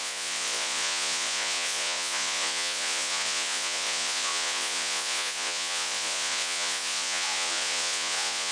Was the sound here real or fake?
fake